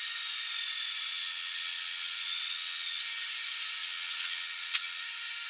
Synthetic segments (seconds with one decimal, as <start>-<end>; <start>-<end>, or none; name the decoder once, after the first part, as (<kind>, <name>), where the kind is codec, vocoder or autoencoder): 1.1-3.0 (vocoder, WaveNeXt); 3.8-5.0